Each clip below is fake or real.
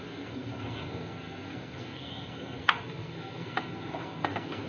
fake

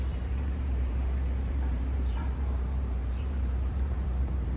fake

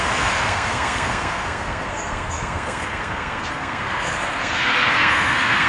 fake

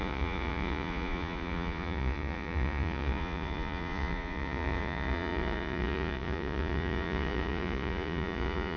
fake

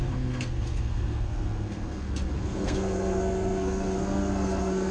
fake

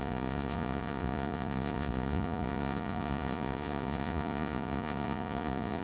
fake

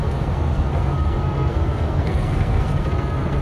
fake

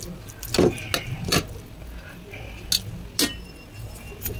real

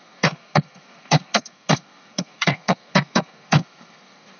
fake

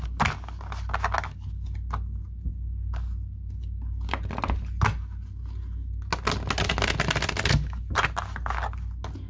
real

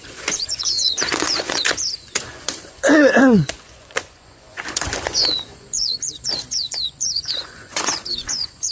fake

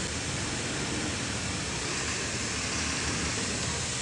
real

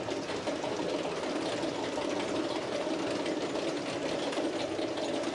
real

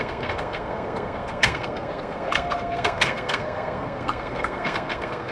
fake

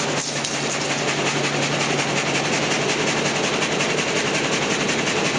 real